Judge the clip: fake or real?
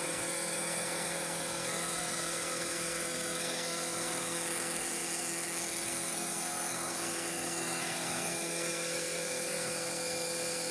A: fake